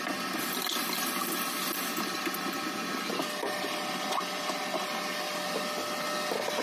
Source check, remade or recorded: recorded